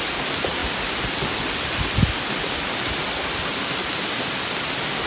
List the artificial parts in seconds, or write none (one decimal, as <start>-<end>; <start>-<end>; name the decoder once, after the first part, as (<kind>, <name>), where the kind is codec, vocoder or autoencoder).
none